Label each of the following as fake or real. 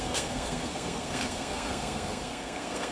fake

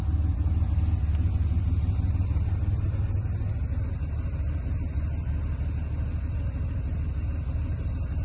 real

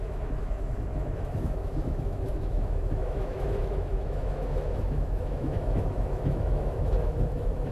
fake